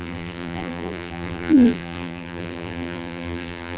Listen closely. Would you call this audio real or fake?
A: fake